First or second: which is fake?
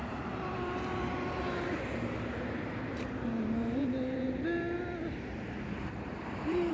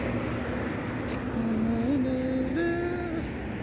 first